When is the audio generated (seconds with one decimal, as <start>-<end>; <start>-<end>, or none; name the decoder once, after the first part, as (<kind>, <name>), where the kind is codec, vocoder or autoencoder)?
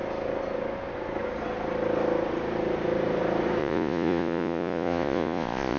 3.6-5.8 (vocoder, Vocos)